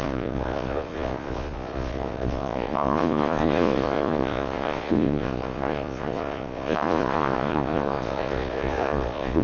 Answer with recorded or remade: remade